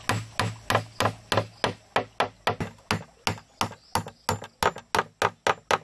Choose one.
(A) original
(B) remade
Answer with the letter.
A